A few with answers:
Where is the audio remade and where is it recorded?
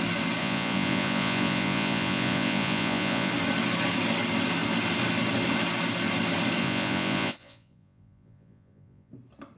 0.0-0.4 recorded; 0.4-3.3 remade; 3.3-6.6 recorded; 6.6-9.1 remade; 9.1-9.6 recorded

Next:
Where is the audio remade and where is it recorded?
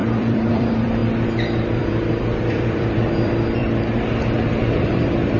0.0-3.6 remade; 3.6-4.5 recorded; 4.5-5.4 remade